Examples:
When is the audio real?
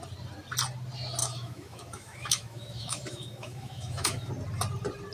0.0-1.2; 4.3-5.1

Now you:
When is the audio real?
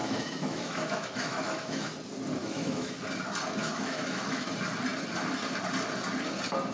1.9-2.4; 3.0-3.6; 4.5-6.7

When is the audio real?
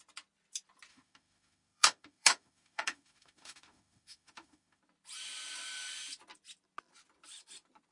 0.0-0.9; 4.8-7.9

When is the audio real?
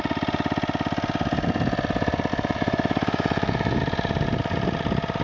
0.0-2.3; 3.8-5.2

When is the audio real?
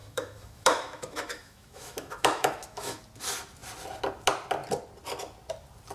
3.0-5.9